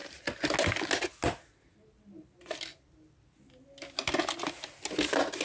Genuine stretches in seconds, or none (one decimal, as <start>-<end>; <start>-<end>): 0.0-5.4